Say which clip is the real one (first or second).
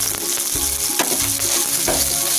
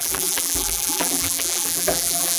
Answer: first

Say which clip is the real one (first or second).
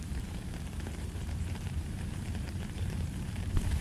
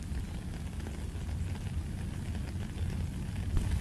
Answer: second